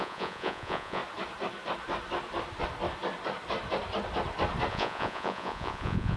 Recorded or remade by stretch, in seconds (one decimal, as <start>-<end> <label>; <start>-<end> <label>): 0.0-1.0 remade; 1.0-4.7 recorded; 4.7-6.2 remade